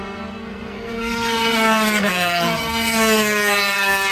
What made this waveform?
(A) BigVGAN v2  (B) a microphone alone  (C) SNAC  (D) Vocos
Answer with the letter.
C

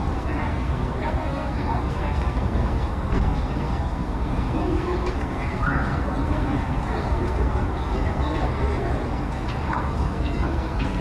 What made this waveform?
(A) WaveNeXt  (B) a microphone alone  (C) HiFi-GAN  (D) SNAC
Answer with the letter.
D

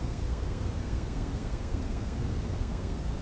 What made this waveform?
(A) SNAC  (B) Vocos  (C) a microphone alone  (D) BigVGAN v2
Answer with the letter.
A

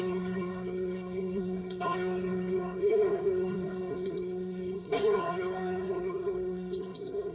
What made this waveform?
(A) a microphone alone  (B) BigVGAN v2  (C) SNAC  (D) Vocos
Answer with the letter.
C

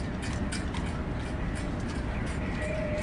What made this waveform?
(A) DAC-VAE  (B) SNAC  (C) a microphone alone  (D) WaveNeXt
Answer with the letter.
C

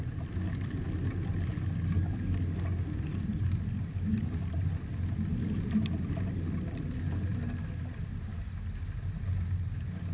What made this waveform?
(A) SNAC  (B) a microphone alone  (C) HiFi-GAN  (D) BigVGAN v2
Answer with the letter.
B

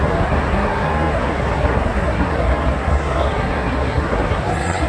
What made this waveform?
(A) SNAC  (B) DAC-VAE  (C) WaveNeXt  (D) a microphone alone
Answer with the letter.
A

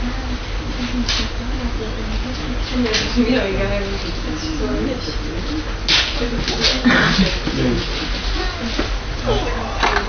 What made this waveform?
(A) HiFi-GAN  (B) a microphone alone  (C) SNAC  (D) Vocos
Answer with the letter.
B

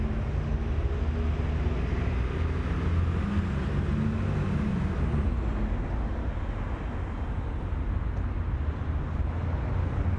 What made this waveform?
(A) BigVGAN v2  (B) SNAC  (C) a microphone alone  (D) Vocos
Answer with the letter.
C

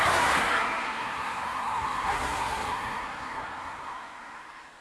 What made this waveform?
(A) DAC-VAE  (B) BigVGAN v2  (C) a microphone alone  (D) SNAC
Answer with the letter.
D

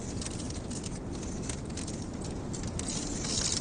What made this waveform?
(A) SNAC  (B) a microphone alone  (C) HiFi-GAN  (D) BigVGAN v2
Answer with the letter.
B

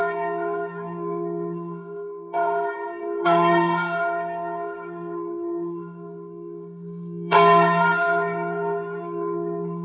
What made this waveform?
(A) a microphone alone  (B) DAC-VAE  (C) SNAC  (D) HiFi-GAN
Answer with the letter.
C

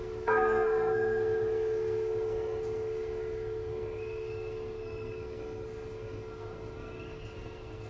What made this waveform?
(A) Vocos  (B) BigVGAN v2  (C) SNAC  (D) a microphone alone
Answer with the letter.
C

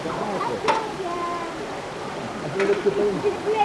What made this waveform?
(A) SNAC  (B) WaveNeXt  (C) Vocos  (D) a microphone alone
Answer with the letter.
D